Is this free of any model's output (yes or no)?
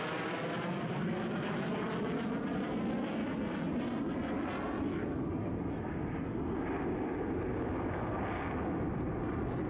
yes